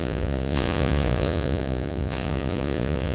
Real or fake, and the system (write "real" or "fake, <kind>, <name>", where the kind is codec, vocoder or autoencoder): fake, vocoder, Vocos